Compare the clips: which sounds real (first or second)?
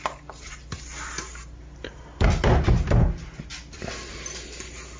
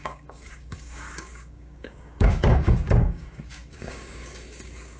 first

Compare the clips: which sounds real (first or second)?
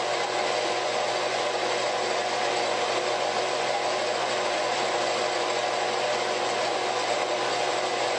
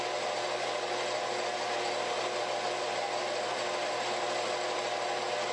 second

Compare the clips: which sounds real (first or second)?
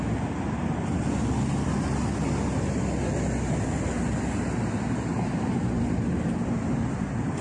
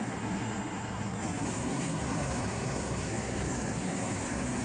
first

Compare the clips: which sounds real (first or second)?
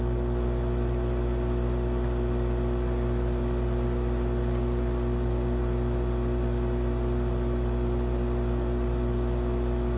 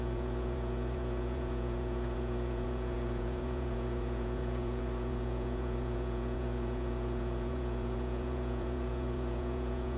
first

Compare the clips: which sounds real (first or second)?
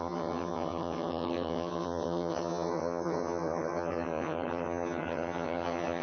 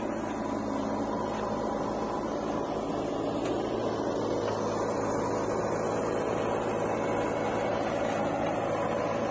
second